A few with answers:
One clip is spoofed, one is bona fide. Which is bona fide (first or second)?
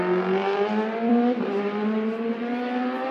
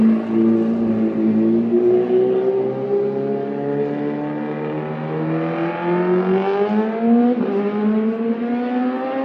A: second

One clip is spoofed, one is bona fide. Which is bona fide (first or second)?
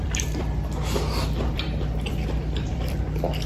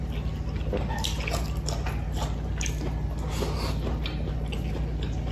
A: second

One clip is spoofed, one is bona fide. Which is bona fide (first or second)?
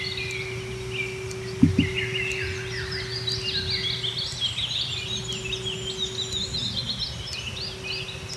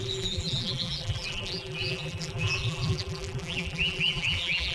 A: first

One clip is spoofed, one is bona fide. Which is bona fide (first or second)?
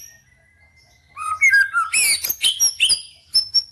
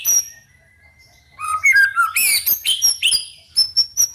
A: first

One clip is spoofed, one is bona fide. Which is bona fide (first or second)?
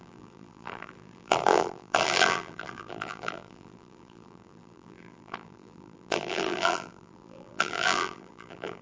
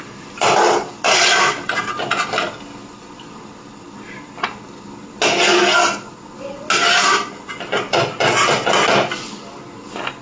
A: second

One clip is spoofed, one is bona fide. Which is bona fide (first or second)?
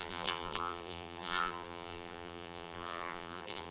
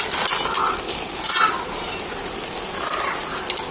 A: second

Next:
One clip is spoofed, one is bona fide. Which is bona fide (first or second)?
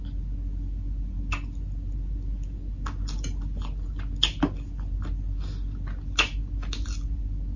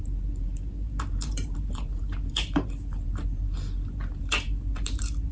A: first